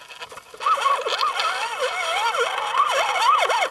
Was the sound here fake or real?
real